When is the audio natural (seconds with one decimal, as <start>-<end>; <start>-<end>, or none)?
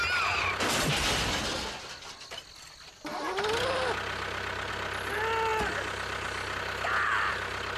0.0-7.8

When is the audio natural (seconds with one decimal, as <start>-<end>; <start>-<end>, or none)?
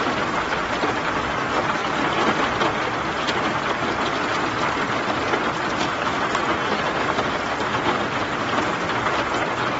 0.0-1.8; 2.4-5.9; 8.4-9.8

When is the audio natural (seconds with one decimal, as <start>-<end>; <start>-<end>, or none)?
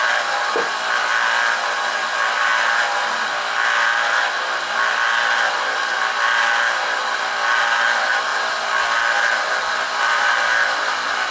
1.1-1.6; 2.5-7.6; 8.3-9.7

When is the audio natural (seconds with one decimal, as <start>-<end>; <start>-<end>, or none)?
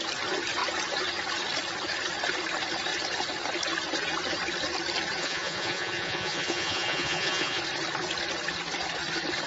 0.0-5.2; 7.6-9.5